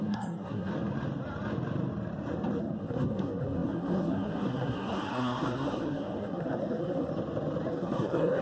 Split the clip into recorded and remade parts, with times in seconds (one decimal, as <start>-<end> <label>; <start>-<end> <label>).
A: 0.0-0.7 remade; 0.7-2.6 recorded; 2.6-7.1 remade; 7.1-7.7 recorded; 7.7-8.4 remade